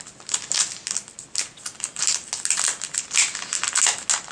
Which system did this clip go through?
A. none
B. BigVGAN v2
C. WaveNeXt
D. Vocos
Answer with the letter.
A